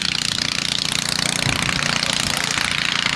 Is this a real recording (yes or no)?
yes